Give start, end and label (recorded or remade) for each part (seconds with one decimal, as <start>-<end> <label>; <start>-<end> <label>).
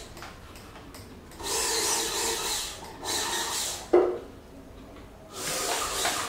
0.0-6.3 recorded